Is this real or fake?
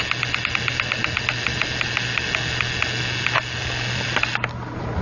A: real